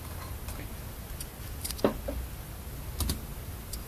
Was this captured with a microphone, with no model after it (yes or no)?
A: yes